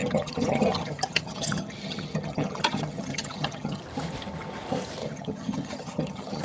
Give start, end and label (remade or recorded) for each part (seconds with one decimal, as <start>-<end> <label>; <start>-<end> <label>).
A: 0.0-3.8 remade; 3.8-5.0 recorded; 5.0-6.4 remade